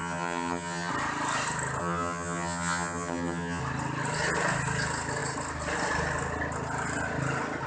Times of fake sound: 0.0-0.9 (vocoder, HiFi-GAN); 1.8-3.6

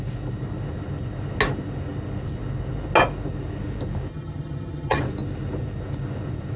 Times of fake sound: 4.1-5.0 (vocoder, HiFi-GAN)

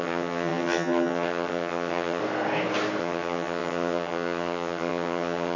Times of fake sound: 0.0-2.2 (vocoder, HiFi-GAN); 3.0-5.6